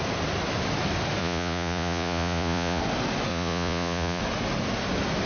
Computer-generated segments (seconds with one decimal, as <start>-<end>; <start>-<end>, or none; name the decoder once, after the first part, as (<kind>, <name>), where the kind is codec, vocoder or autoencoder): 1.2-2.8 (vocoder, Vocos); 3.3-4.2